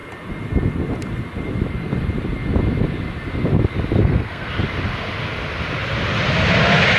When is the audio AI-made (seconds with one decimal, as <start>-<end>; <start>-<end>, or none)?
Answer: 4.0-4.5